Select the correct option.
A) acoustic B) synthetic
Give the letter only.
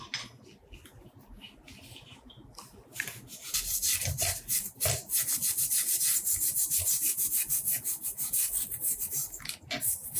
A